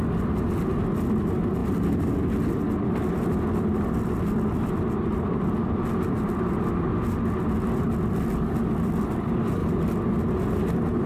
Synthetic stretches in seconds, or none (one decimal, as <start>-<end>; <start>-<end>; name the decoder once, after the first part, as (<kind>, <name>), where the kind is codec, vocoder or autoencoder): none